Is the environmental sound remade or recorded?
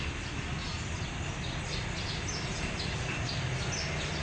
recorded